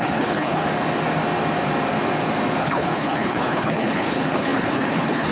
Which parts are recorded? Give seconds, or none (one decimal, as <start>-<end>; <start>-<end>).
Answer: 0.6-2.6